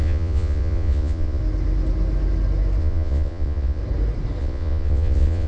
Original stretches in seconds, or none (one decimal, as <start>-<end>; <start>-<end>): 1.4-2.8; 3.8-4.4